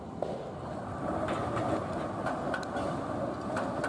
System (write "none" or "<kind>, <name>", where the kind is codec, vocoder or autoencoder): none